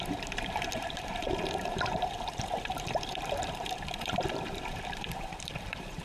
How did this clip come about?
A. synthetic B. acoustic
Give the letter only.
A